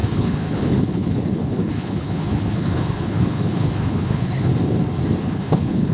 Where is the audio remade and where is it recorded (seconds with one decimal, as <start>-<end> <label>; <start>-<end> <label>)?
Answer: 0.0-4.5 remade; 4.5-5.2 recorded; 5.2-5.9 remade